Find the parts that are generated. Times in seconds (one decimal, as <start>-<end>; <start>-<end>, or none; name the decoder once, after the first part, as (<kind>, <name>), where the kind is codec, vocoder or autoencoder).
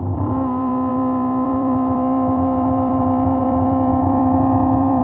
0.0-5.0 (vocoder, BigVGAN v2)